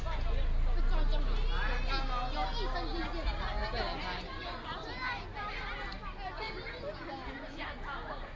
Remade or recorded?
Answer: recorded